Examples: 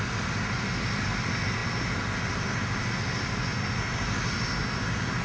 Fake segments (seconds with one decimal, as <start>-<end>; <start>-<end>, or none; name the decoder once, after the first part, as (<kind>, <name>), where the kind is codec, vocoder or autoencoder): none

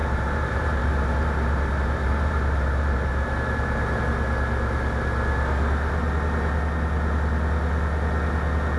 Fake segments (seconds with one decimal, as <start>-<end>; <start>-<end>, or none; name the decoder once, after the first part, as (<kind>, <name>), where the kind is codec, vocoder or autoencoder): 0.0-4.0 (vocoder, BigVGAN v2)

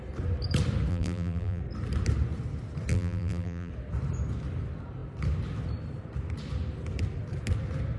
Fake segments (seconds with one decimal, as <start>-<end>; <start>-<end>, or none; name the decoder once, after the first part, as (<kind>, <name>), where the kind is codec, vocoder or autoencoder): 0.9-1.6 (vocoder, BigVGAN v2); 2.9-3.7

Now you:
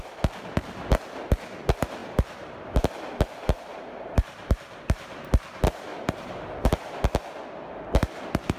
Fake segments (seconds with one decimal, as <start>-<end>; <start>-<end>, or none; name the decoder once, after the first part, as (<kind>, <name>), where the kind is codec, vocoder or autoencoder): 2.0-2.9 (vocoder, BigVGAN v2); 3.4-5.3; 5.9-7.0